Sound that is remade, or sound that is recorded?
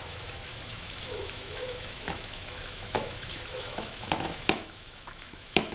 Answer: remade